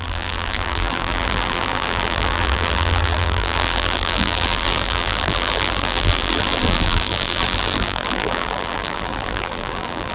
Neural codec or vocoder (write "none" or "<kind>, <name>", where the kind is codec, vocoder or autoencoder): vocoder, BigVGAN v2